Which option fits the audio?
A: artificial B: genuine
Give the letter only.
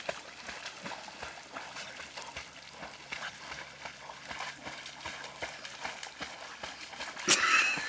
B